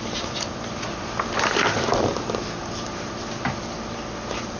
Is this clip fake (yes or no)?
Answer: no